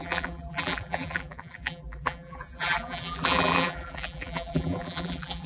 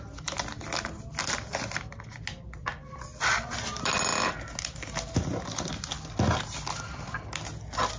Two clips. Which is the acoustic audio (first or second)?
second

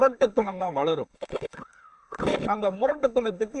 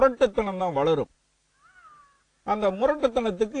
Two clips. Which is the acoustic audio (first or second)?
second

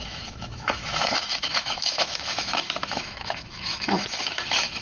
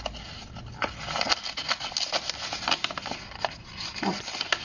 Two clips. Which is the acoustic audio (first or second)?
second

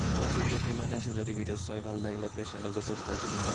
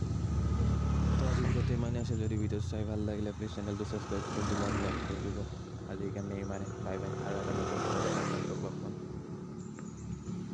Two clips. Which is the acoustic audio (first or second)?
second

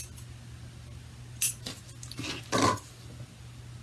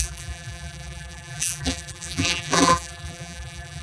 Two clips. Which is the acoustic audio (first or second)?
first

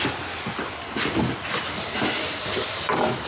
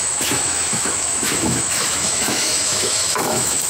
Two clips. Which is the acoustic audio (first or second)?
first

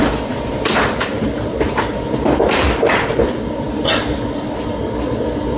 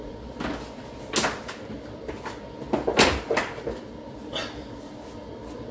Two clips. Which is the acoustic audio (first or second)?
second